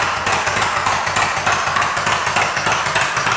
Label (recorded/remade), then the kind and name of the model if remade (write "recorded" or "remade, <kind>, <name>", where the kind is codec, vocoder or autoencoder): recorded